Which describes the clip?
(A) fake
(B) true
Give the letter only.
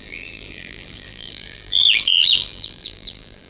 A